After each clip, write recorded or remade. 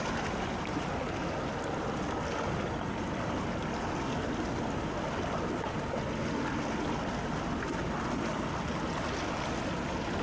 recorded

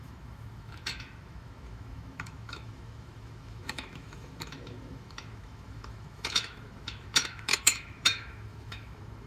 remade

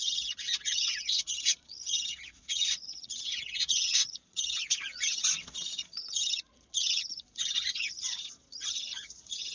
remade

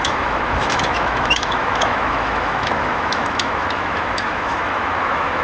remade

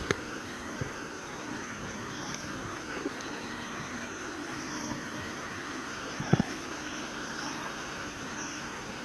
remade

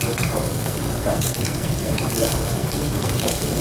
remade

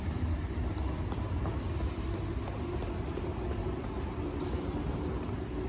recorded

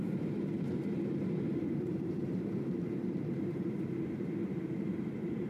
remade